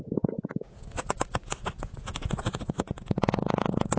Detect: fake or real fake